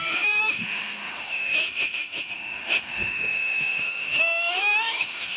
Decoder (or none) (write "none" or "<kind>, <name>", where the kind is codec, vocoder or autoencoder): autoencoder, DAC-VAE